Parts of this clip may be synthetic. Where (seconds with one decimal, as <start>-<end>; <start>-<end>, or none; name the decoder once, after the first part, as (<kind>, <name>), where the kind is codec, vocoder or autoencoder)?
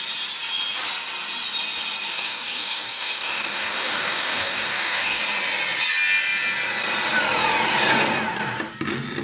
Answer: 2.1-5.2 (codec, DAC)